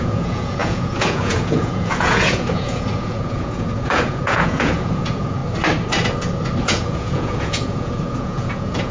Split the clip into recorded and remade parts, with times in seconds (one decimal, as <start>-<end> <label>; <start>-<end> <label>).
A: 0.0-5.4 remade; 5.4-6.6 recorded; 6.6-8.9 remade